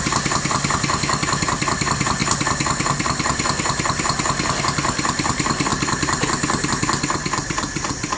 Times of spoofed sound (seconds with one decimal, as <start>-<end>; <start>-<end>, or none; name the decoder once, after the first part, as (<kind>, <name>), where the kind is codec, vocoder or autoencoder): none